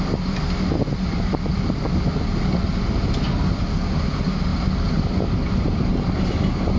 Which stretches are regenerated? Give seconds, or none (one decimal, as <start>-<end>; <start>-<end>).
none